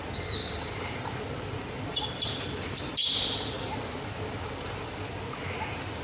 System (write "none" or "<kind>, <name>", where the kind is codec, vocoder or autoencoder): none